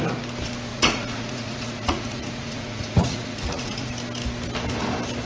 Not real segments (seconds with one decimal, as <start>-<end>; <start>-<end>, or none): 0.7-3.9